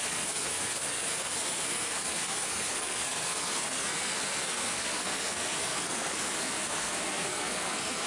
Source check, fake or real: fake